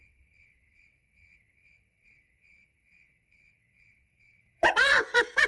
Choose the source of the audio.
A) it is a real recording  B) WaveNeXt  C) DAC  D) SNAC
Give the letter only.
B